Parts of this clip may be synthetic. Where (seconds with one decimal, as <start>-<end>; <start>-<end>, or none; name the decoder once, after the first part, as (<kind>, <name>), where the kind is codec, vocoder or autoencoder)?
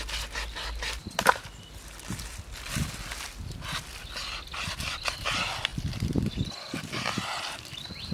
none